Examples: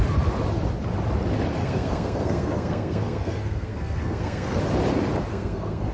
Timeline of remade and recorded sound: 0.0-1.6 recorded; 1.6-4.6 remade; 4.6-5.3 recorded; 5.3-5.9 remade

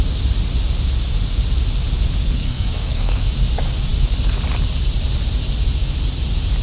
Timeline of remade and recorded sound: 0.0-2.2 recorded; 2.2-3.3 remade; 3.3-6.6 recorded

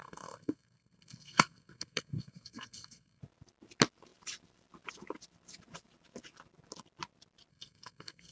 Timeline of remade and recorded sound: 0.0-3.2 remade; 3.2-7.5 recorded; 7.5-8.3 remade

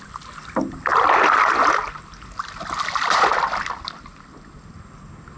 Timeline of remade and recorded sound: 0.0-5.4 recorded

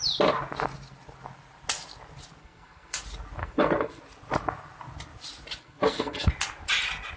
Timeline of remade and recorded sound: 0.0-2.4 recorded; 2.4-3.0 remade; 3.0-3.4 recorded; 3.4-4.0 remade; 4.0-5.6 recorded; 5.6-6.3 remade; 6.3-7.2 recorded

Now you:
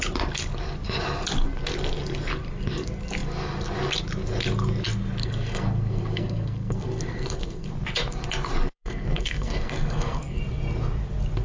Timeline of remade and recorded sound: 0.0-5.2 recorded; 5.2-7.7 remade; 7.7-8.7 recorded; 8.7-10.4 remade; 10.4-11.4 recorded

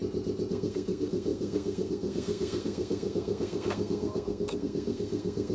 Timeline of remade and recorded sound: 0.0-0.5 recorded; 0.5-5.5 remade

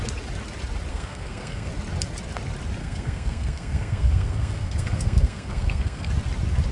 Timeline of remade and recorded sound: 0.0-0.9 recorded; 0.9-1.7 remade; 1.7-2.8 recorded; 2.8-6.1 remade; 6.1-6.7 recorded